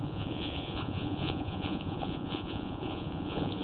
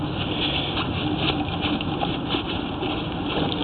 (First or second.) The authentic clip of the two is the second